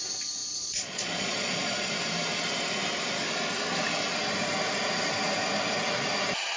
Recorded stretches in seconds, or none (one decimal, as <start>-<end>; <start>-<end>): 0.0-0.4; 1.9-6.6